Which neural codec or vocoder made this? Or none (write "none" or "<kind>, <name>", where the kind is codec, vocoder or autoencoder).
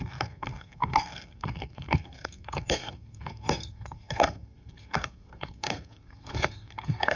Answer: codec, SNAC